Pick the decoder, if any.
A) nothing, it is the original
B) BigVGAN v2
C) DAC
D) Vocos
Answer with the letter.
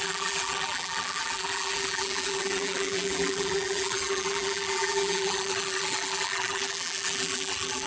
B